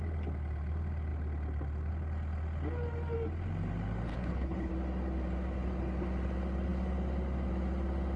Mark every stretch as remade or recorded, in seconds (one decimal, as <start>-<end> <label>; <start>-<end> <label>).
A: 0.0-4.1 recorded; 4.1-4.7 remade; 4.7-8.2 recorded